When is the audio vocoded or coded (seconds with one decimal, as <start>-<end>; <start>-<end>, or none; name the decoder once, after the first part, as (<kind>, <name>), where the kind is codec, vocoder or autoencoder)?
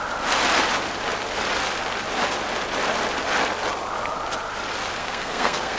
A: 5.0-5.8 (codec, SNAC)